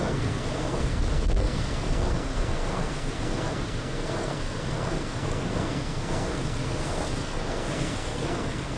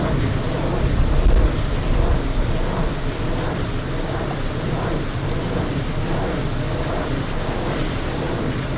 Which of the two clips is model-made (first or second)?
first